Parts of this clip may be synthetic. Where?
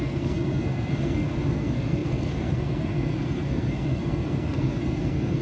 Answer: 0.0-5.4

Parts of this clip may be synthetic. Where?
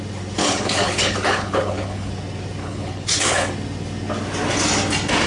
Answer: 0.4-2.1; 2.6-3.5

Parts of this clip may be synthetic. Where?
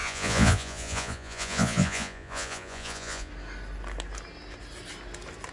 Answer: 0.0-3.3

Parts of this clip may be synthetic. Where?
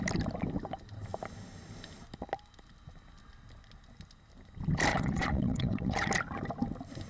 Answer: 4.9-6.1